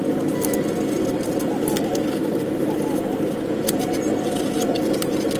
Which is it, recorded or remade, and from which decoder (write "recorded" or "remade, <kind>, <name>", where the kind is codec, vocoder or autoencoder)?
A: recorded